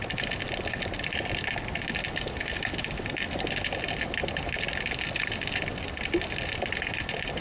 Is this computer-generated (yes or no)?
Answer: no